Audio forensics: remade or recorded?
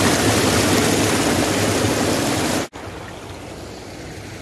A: recorded